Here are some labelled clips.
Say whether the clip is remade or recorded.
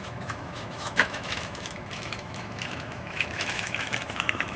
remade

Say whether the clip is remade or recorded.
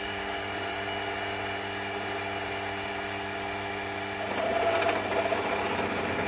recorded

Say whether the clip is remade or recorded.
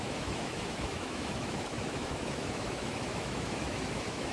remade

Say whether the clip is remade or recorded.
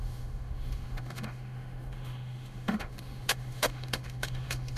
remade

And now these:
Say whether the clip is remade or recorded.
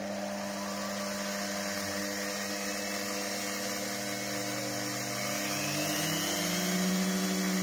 recorded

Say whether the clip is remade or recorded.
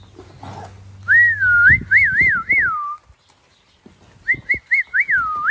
recorded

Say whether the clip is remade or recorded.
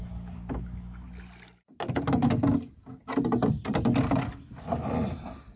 recorded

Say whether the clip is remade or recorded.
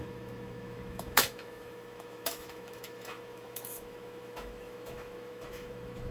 remade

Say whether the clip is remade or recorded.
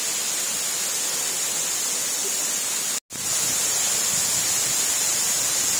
recorded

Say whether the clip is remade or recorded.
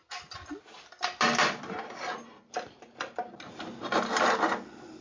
recorded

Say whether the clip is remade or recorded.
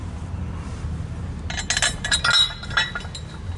recorded